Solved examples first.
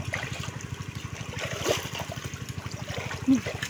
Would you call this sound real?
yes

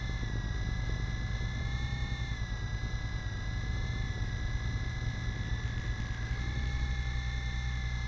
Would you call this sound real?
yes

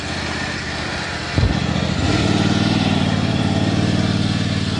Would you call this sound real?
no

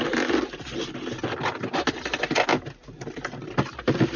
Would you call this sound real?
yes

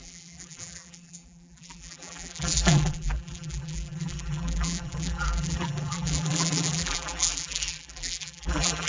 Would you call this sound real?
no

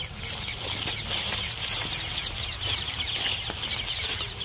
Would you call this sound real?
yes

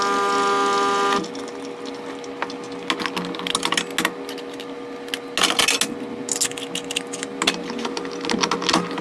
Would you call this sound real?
yes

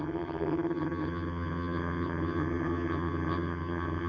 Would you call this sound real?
no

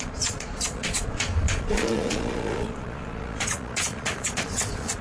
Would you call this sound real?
no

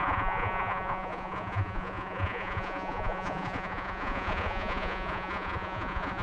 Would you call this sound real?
no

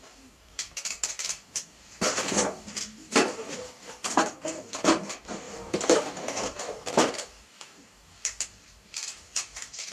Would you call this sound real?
no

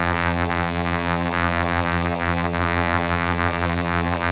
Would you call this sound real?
no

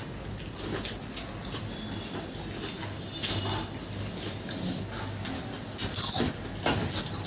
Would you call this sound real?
yes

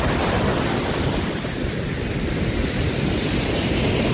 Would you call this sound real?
yes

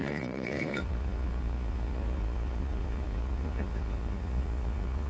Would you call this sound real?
no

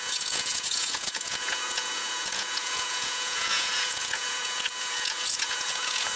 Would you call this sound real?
no